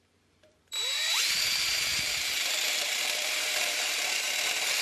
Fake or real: fake